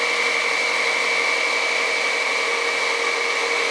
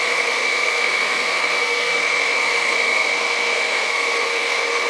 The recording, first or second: first